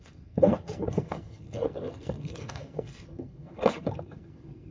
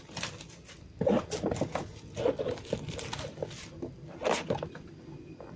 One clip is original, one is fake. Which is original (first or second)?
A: second